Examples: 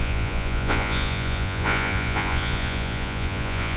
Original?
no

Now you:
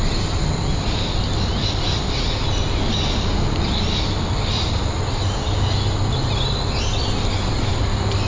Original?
yes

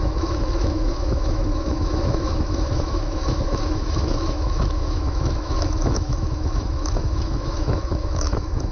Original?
no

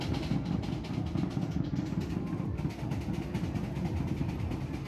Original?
yes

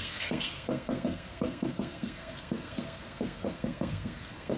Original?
no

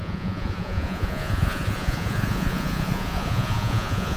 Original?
no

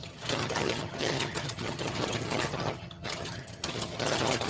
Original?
no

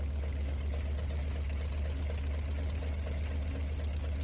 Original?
yes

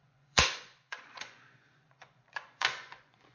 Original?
no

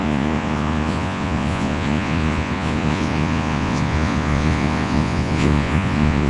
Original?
no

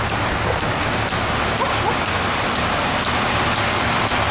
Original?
yes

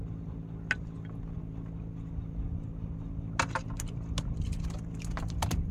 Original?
yes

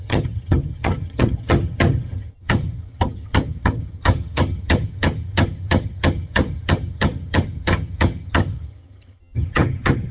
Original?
no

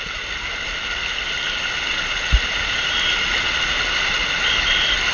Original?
yes